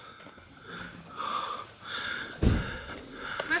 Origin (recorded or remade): recorded